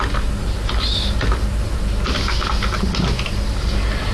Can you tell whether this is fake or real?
real